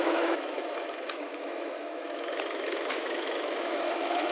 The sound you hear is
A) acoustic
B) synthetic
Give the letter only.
B